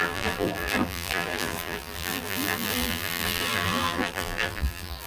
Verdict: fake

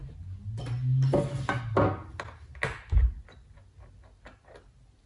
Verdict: real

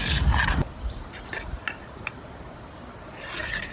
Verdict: real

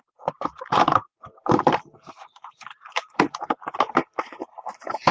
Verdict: fake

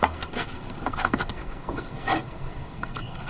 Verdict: fake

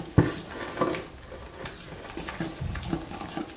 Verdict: real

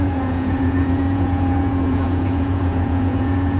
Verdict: fake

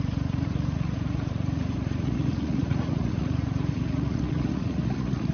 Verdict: fake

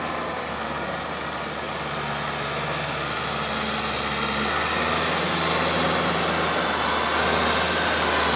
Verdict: real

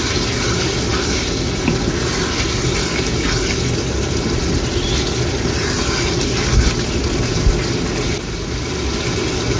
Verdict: real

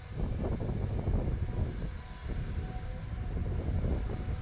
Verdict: real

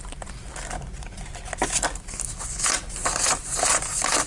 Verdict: real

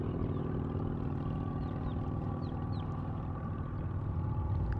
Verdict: fake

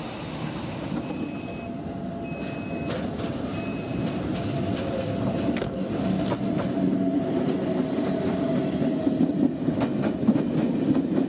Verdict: real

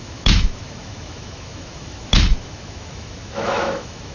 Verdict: fake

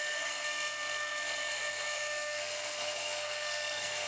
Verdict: fake